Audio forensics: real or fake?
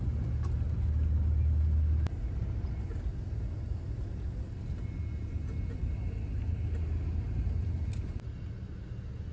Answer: real